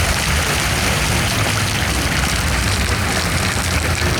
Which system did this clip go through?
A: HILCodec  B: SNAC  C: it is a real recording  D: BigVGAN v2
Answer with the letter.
C